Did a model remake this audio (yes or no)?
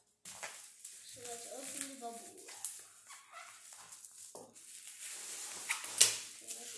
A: no